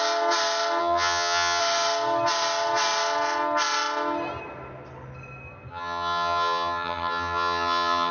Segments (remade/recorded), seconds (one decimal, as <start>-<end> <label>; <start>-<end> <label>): 0.0-0.8 recorded; 0.8-1.6 remade; 1.6-5.7 recorded; 5.7-8.1 remade